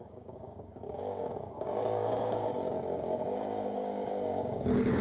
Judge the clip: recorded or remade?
remade